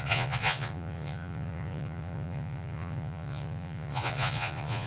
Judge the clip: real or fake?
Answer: fake